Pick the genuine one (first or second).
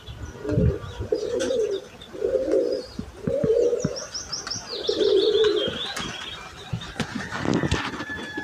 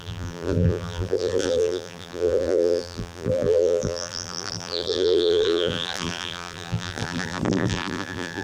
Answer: first